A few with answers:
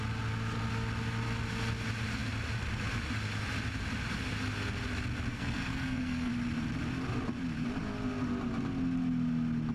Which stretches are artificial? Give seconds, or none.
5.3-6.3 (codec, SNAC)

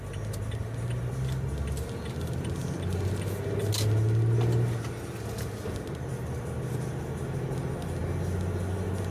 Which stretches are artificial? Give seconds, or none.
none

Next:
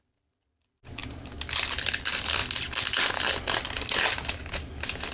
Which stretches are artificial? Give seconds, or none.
none